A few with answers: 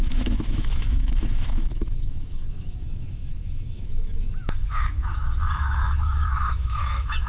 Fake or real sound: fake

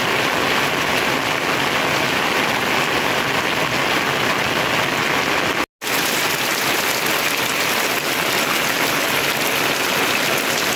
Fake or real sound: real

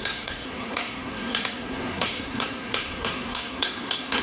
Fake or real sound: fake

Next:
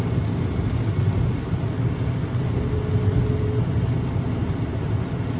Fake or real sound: real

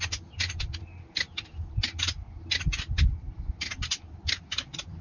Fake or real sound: real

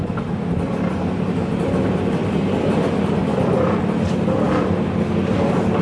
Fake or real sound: real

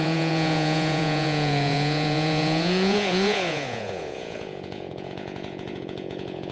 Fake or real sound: fake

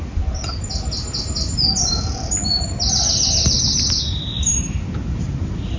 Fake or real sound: real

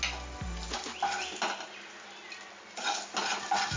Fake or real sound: real